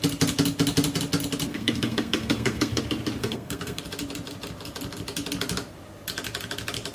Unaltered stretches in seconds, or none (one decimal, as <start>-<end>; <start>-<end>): 0.0-1.5; 2.8-3.2; 3.8-6.9